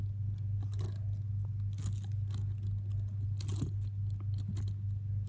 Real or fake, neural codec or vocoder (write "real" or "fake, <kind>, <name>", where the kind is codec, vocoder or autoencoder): real